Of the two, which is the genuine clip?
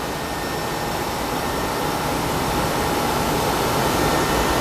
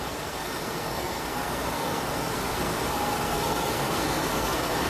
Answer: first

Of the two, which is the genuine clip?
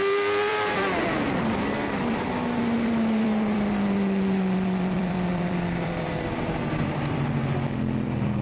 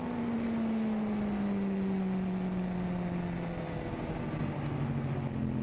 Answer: second